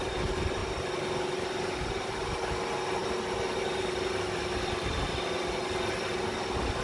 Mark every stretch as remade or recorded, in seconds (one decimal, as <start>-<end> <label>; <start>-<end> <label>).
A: 0.0-6.8 recorded